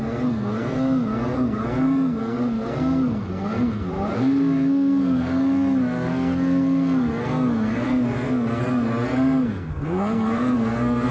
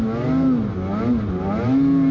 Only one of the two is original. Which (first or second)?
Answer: second